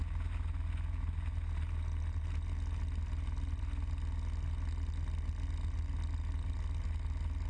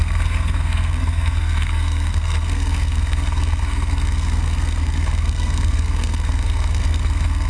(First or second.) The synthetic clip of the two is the second